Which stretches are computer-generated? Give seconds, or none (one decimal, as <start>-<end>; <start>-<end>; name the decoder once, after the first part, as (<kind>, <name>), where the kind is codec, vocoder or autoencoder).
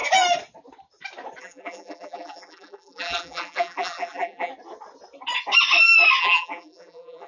1.4-4.5 (vocoder, BigVGAN v2); 6.2-7.3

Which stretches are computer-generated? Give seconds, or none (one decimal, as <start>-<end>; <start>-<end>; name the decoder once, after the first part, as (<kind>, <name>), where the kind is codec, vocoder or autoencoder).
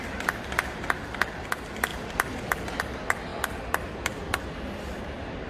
3.3-4.2 (vocoder, BigVGAN v2)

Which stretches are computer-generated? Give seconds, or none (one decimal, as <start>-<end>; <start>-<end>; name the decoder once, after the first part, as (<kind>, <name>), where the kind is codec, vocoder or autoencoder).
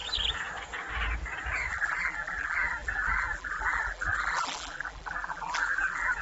1.7-6.2 (vocoder, BigVGAN v2)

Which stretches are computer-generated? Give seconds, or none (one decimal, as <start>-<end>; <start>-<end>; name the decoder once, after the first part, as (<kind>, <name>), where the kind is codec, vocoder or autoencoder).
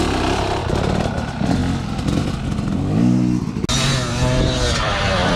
0.0-0.6 (vocoder, BigVGAN v2); 1.1-1.6; 4.8-5.4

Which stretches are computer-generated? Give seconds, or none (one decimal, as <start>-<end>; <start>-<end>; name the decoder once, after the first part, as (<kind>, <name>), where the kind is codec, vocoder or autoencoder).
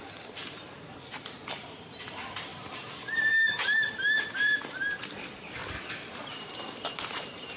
0.0-5.6 (vocoder, BigVGAN v2); 6.3-7.6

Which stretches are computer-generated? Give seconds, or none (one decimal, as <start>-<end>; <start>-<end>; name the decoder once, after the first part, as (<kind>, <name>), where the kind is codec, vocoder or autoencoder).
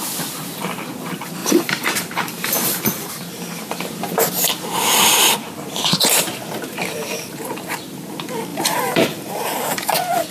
1.4-3.7 (vocoder, BigVGAN v2); 8.5-9.9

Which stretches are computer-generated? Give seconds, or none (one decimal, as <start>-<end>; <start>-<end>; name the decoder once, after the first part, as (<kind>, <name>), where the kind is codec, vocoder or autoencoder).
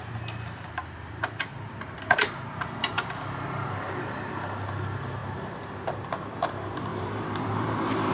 1.5-4.1 (vocoder, BigVGAN v2); 6.9-8.1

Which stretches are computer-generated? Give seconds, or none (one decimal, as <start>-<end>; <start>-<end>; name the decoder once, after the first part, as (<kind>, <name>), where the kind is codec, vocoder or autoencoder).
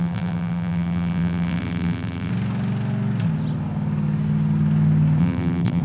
0.0-2.3 (vocoder, BigVGAN v2); 5.2-5.8